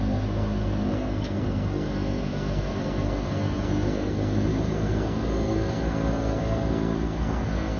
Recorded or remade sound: remade